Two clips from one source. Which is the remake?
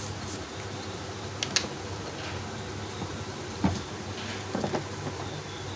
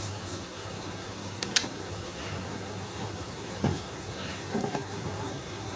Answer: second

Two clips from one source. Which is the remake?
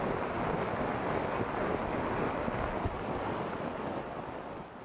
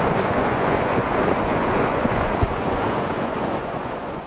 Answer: second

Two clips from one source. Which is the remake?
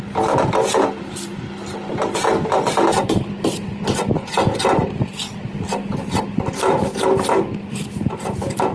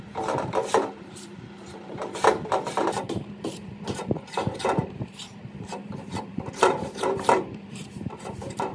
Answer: second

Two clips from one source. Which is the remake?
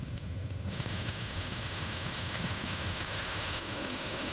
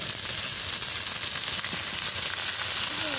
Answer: first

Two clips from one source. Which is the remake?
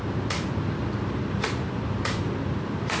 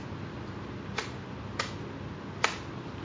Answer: first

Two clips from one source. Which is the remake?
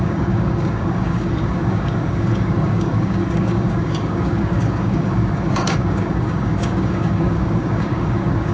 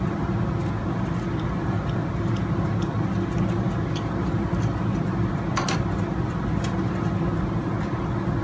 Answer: first